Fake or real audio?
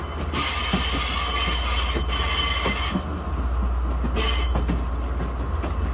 real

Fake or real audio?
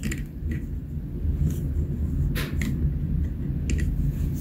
real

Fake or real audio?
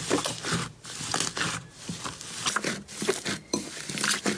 fake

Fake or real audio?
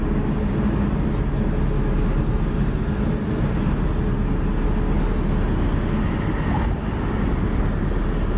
real